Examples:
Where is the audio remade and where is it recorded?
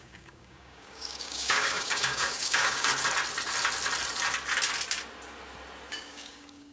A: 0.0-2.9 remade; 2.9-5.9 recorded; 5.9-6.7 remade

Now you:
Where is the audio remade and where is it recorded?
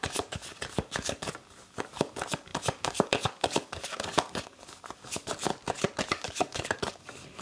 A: 0.0-5.5 remade; 5.5-6.1 recorded; 6.1-7.4 remade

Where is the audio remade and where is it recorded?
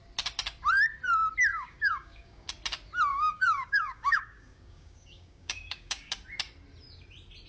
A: 0.0-1.5 recorded; 1.5-2.5 remade; 2.5-3.1 recorded; 3.1-6.1 remade; 6.1-7.5 recorded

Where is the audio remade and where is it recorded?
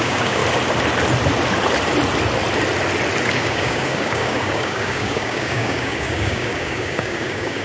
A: 0.0-0.4 remade; 0.4-3.3 recorded; 3.3-7.6 remade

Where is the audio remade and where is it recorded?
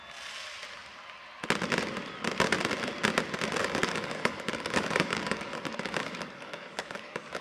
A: 0.0-3.6 recorded; 3.6-7.4 remade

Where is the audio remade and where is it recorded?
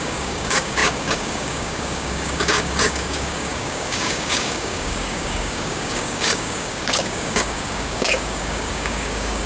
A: 0.0-9.5 remade